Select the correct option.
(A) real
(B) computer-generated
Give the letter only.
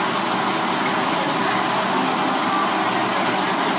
A